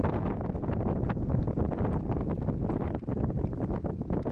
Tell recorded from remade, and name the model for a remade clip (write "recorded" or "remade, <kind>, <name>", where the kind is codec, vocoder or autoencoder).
recorded